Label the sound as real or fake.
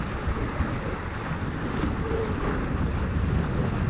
real